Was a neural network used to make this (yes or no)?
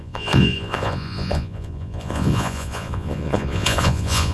yes